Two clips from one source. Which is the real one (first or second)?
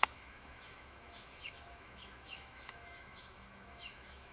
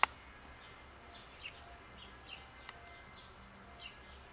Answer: second